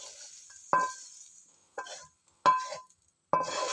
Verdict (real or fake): real